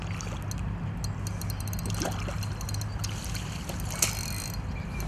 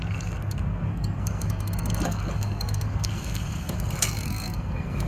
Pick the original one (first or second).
first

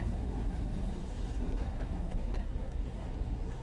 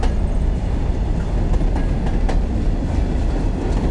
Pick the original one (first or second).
second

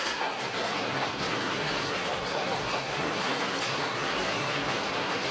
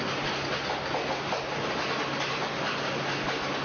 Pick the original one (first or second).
second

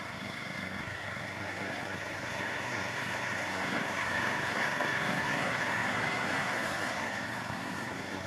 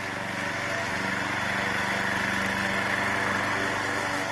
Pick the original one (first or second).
second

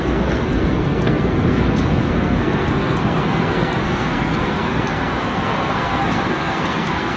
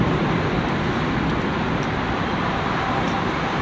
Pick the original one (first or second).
second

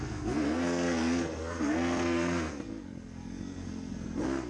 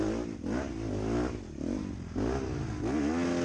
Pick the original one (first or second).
second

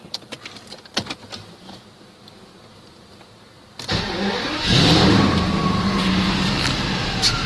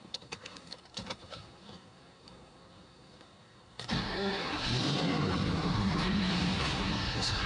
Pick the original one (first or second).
first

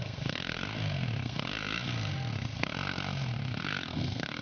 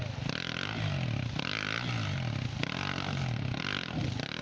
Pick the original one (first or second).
second